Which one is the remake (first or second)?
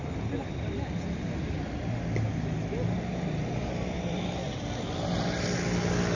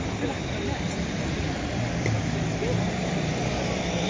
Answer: second